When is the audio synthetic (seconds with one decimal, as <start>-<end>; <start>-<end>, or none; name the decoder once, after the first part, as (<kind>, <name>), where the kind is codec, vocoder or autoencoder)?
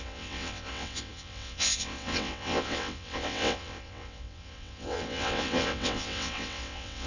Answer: 0.0-7.1 (vocoder, WaveNeXt)